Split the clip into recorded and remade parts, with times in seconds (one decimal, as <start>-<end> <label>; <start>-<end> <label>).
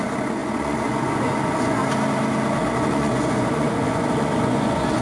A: 0.0-1.8 remade; 1.8-2.8 recorded; 2.8-5.0 remade